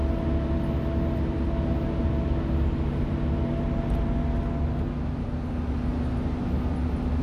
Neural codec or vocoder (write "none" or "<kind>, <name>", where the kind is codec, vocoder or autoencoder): none